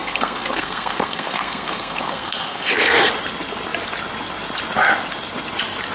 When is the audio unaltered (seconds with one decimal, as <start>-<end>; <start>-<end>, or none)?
3.1-5.9

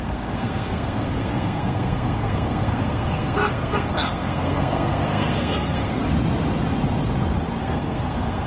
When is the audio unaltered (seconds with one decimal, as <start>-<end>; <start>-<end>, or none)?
6.0-7.6

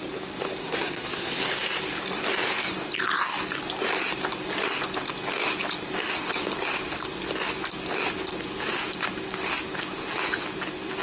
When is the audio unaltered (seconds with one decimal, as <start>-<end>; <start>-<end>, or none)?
0.0-0.6; 1.3-11.0

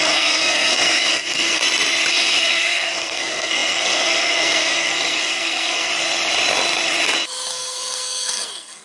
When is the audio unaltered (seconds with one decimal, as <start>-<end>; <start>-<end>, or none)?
1.6-2.1; 5.9-7.5

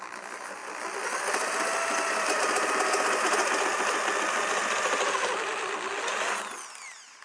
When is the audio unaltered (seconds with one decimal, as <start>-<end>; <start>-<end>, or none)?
0.0-7.2

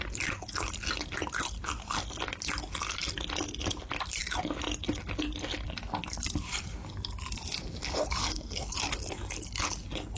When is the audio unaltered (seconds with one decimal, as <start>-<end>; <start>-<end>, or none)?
0.0-8.2; 8.7-10.2